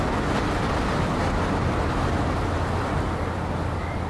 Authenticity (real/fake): real